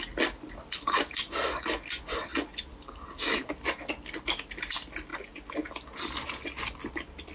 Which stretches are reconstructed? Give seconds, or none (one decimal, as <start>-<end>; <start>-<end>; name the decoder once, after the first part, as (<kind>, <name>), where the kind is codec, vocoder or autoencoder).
none